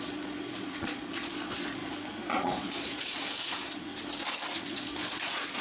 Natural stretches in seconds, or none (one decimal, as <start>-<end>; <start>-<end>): 3.9-4.6